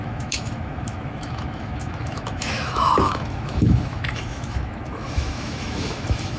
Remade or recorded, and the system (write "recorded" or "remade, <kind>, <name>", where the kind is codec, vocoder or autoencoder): remade, autoencoder, DAC-VAE